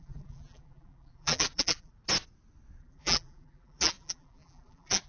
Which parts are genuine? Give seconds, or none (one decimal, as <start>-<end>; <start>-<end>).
1.9-2.8

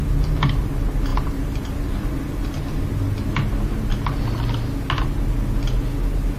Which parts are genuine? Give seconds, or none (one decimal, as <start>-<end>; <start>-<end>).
0.0-6.4

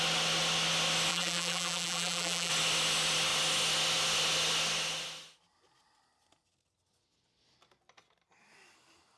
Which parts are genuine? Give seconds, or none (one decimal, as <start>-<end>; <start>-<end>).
0.0-1.1; 2.5-9.2

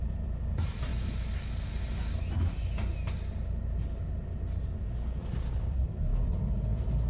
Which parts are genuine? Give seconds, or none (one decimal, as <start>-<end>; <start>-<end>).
0.9-5.2

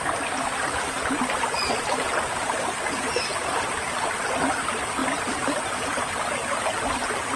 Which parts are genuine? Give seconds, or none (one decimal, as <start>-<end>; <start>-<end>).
0.0-5.0; 6.2-7.4